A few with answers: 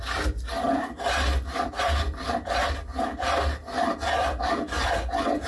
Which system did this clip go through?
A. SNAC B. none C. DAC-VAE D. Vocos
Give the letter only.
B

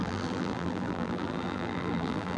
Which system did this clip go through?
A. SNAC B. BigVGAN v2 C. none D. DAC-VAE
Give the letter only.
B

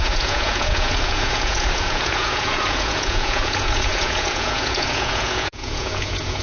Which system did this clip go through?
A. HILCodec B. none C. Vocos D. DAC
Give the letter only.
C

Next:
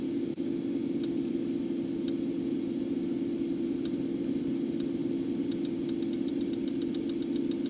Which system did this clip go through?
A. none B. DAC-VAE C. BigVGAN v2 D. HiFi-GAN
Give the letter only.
A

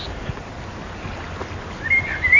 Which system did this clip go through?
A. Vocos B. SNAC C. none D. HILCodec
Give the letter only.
C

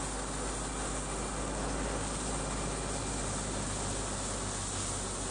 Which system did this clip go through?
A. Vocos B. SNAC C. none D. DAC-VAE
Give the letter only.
C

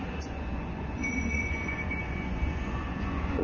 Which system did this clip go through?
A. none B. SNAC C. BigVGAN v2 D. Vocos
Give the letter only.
D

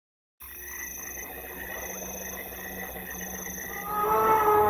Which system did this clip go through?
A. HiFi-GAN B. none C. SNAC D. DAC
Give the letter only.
B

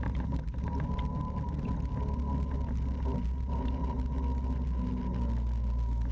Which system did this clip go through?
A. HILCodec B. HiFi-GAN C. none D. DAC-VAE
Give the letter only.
C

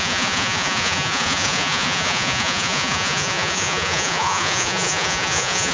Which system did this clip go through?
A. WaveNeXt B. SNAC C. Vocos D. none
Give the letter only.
C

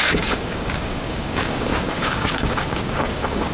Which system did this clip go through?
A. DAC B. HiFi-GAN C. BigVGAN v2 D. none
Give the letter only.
A